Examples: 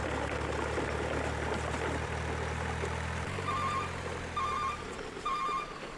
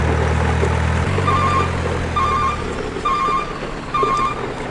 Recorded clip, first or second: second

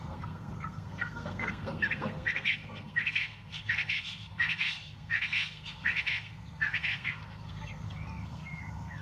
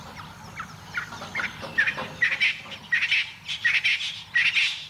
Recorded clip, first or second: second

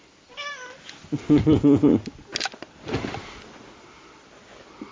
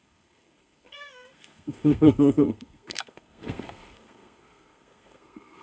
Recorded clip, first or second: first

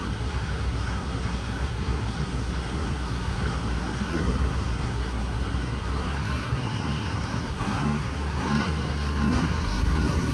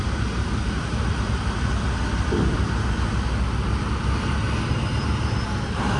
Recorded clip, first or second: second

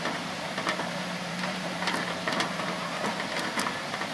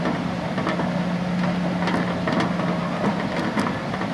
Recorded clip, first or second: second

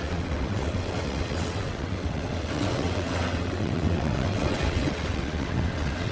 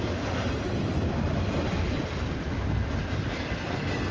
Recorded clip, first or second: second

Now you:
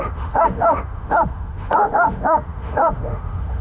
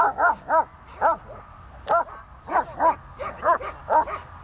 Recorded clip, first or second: second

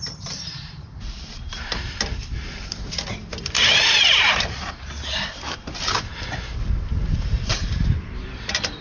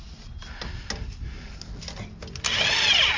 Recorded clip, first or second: second